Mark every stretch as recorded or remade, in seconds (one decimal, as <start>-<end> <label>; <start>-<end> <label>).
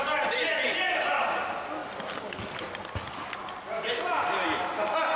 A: 0.0-5.2 recorded